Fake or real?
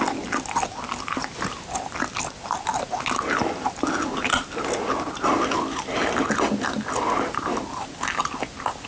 real